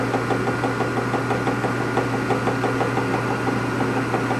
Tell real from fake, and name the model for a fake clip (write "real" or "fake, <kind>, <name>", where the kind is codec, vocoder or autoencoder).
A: real